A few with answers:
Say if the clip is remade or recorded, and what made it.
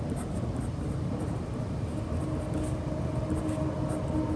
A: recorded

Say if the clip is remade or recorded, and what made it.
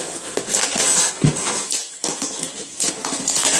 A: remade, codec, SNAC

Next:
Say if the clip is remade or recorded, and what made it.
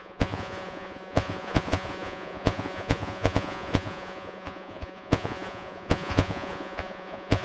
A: remade, vocoder, Vocos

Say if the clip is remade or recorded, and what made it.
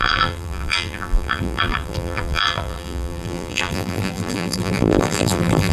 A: remade, vocoder, BigVGAN v2